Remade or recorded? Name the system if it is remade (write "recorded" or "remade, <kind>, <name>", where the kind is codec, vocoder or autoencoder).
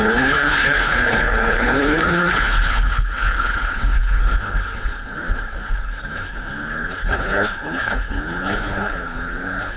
remade, codec, HILCodec